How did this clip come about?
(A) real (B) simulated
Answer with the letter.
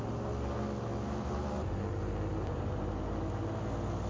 A